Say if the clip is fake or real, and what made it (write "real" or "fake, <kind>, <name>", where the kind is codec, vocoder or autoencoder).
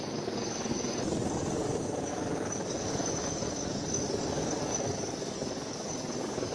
fake, codec, DAC